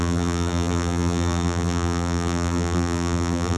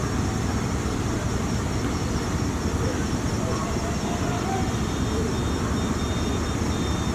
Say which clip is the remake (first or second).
first